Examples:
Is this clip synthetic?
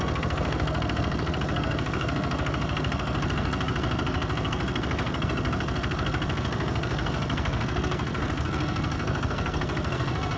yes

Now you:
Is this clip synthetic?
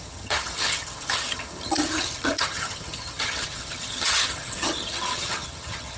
yes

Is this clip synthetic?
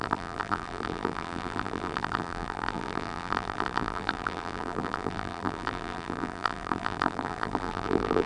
yes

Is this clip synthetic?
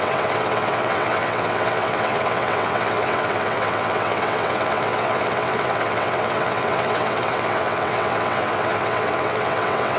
yes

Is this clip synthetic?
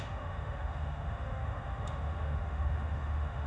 yes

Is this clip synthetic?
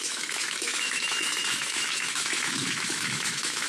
yes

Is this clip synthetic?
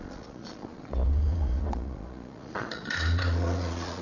yes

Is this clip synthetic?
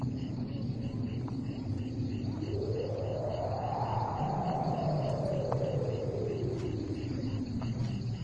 no